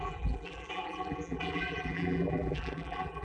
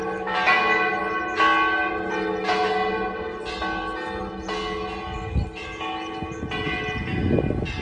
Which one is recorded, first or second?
second